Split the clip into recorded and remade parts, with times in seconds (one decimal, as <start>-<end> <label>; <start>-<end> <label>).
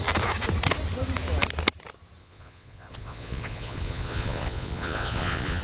0.0-2.2 recorded; 2.2-5.6 remade